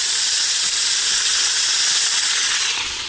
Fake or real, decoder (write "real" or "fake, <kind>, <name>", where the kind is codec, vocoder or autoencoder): fake, vocoder, Vocos